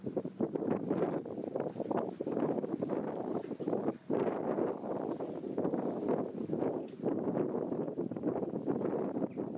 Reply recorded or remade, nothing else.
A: recorded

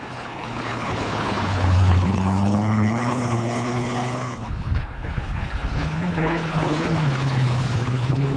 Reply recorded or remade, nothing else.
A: remade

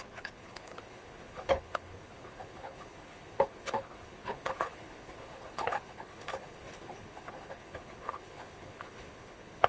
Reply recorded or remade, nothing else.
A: remade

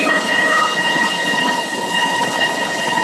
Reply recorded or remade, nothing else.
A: remade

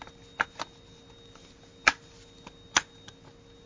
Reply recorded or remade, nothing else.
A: recorded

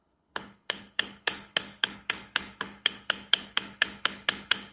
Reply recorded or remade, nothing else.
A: remade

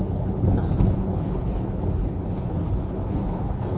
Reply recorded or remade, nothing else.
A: remade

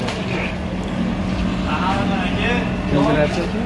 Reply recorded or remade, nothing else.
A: recorded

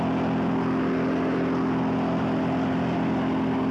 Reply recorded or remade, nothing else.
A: recorded